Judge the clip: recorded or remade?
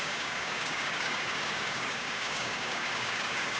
remade